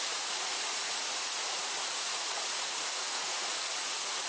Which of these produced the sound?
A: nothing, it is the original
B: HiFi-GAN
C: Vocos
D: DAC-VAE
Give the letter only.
C